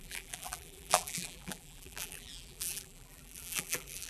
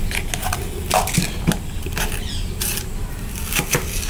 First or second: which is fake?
first